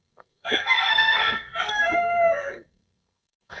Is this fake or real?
fake